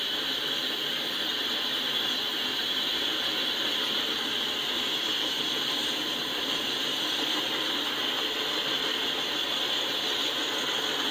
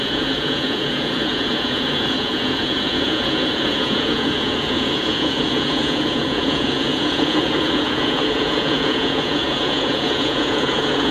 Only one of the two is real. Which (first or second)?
first